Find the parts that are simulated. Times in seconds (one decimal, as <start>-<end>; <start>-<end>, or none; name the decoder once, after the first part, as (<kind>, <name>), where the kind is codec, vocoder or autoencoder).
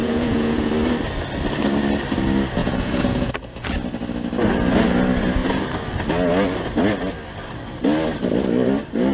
0.0-0.7 (vocoder, Vocos); 2.6-3.3